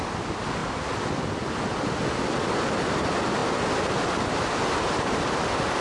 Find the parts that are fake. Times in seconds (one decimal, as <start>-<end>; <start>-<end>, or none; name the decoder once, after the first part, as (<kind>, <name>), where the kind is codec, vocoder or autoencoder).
none